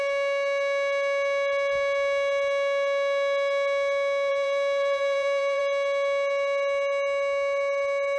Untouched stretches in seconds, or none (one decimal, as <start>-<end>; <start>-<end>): 0.0-4.3; 5.6-8.2